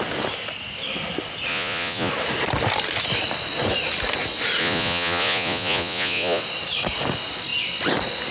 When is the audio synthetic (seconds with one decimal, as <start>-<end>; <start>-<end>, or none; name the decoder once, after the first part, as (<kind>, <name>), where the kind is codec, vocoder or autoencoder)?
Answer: 1.5-2.1 (vocoder, Vocos); 4.6-6.4